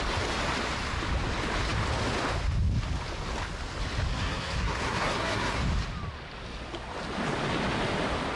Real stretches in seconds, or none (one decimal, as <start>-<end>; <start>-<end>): 0.0-4.1; 5.6-8.4